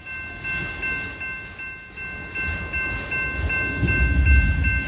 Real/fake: real